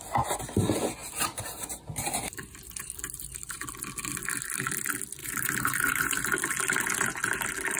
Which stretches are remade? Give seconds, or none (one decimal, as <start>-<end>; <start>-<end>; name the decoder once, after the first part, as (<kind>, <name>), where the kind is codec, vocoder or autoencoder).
1.0-3.7 (vocoder, BigVGAN v2); 5.2-6.2